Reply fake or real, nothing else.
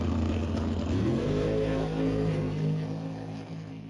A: fake